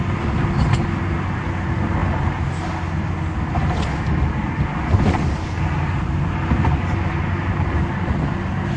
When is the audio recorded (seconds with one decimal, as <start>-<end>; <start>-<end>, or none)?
0.0-8.8